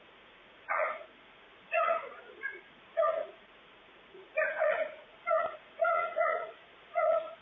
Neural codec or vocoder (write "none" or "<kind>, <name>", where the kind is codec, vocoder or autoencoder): vocoder, Vocos